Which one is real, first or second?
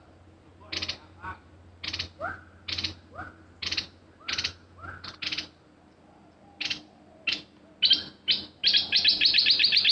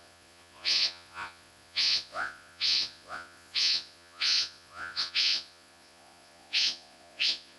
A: first